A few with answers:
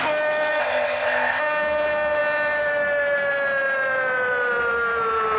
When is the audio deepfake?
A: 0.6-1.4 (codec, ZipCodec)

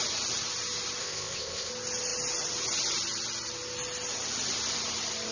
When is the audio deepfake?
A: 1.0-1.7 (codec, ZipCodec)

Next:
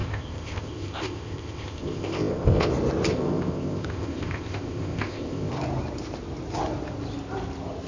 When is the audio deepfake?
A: 0.0-2.7 (codec, ZipCodec); 3.1-5.5

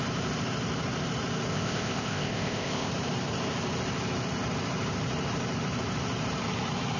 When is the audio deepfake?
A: 1.5-2.9 (codec, ZipCodec)

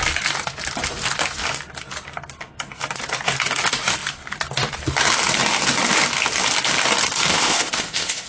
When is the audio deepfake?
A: 7.3-8.3 (codec, ZipCodec)

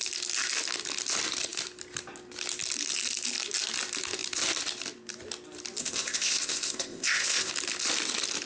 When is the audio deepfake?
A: 5.8-7.5 (codec, ZipCodec)

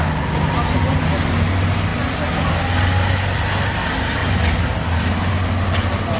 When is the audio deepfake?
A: none